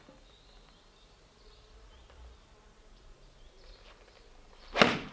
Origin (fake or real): real